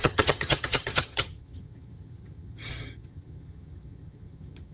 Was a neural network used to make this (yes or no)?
yes